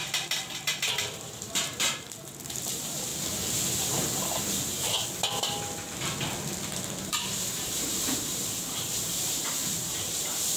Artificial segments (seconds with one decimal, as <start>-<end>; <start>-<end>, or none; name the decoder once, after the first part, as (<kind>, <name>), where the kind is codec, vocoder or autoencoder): 0.0-3.1 (vocoder, BigVGAN v2); 7.0-8.4; 9.0-10.6